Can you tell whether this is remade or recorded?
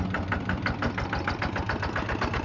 recorded